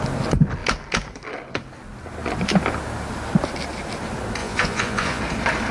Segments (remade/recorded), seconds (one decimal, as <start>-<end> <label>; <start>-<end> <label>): 0.0-4.4 recorded; 4.4-5.2 remade; 5.2-5.7 recorded